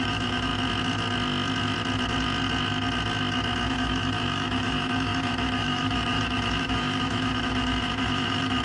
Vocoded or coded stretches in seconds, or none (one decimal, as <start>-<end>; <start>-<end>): 0.0-0.5; 3.7-8.6